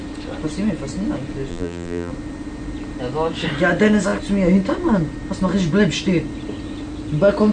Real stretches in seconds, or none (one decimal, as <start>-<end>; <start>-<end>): 0.0-1.5; 2.1-7.5